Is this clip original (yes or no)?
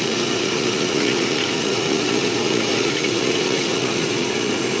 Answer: no